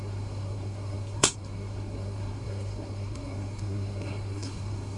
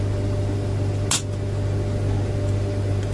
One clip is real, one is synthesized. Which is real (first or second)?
second